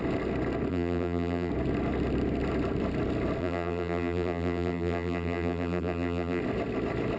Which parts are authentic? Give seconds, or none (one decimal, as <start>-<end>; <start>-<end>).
0.0-0.7; 1.5-3.4; 6.4-7.2